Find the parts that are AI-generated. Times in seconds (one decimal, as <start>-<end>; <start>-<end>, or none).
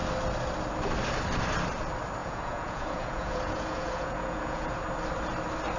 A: 2.2-4.8